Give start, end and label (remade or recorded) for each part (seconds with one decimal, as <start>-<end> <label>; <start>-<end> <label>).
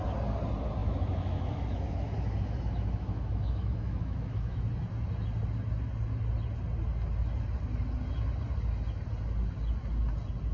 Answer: 0.0-0.8 recorded; 0.8-4.6 remade; 4.6-10.5 recorded